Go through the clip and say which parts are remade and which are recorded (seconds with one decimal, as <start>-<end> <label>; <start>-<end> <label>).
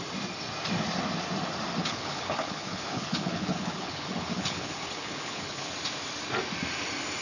0.0-1.8 recorded; 1.8-5.7 remade; 5.7-7.2 recorded